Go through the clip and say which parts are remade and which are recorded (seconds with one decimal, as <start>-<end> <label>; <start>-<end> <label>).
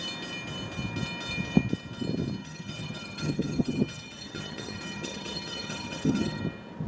0.0-2.4 recorded; 2.4-6.4 remade; 6.4-6.9 recorded